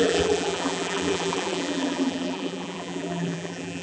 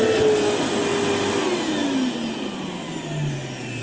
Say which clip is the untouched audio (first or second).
second